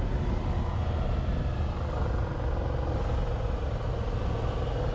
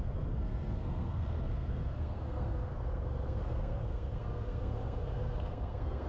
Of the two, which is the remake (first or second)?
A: second